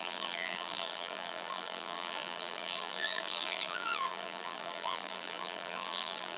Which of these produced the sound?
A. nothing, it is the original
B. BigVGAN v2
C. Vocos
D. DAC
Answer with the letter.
B